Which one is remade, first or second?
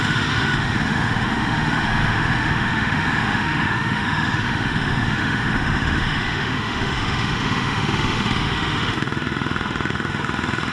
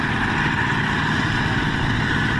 first